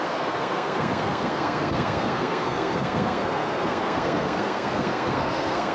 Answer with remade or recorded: remade